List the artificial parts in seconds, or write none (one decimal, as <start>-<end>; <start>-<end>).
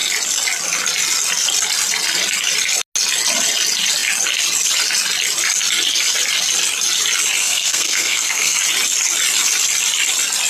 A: 7.4-8.6